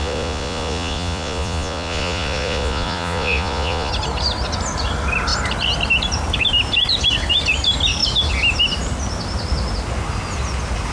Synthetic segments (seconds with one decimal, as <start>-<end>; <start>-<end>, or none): 0.0-3.9